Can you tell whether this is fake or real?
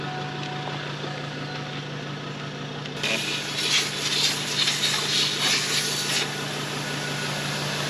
real